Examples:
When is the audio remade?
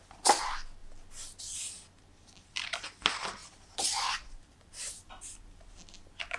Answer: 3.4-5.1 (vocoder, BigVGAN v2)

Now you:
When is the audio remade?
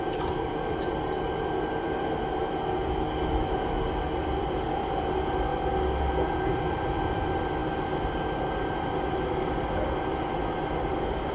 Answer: 0.0-2.4 (vocoder, BigVGAN v2); 3.3-5.5; 6.0-7.6; 9.4-11.3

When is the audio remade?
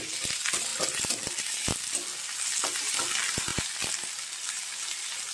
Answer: none